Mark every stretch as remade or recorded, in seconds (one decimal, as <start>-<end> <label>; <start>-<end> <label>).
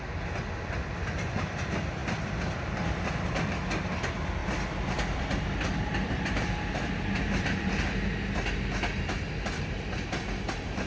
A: 0.0-2.0 recorded; 2.0-3.1 remade; 3.1-4.4 recorded; 4.4-8.1 remade; 8.1-10.9 recorded